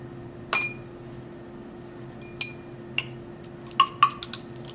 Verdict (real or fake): real